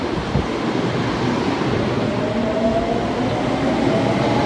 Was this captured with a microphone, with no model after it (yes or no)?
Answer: yes